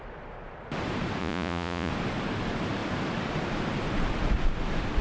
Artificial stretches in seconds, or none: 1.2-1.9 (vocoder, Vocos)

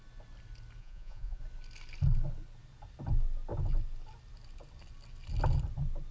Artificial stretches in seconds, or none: 0.8-1.4 (vocoder, Vocos)